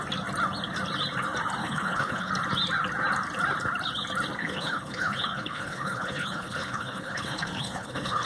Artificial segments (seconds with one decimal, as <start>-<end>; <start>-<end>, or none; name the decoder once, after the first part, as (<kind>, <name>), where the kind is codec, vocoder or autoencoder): 1.6-2.3 (codec, HILCodec); 4.4-8.3